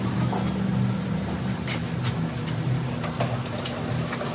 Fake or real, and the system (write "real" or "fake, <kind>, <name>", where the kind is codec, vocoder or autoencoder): real